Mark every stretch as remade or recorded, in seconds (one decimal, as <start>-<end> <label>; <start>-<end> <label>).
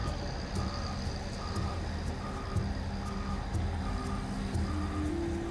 0.0-5.5 recorded